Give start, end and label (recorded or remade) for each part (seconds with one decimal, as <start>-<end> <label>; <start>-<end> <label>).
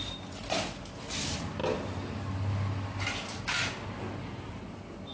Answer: 0.0-5.1 recorded